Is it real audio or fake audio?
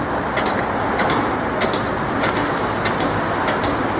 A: real